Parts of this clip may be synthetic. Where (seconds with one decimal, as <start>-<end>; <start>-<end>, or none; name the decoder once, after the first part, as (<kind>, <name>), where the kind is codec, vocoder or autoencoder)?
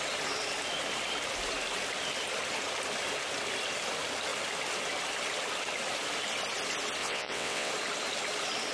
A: 7.0-7.7 (vocoder, WaveNeXt)